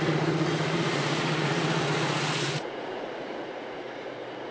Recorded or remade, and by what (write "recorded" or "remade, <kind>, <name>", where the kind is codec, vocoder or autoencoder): remade, vocoder, Vocos